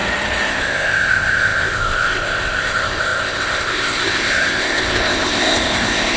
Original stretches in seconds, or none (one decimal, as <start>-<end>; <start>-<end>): 0.0-0.5